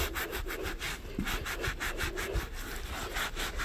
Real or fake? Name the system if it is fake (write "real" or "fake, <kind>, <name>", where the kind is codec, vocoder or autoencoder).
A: real